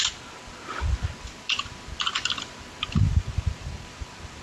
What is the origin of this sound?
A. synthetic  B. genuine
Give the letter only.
B